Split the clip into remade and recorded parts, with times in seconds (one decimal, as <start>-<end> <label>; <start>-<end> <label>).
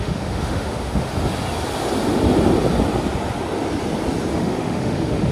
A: 0.0-1.1 remade; 1.1-4.3 recorded; 4.3-5.3 remade